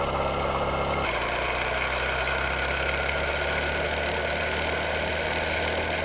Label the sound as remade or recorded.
recorded